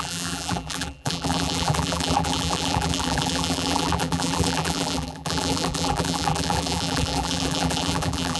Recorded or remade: remade